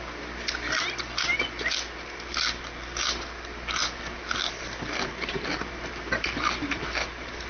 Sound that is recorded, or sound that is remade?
recorded